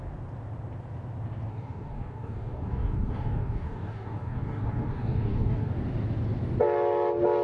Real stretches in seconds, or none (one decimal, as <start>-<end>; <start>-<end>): 0.0-1.5; 5.7-7.4